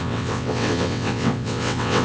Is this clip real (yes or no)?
no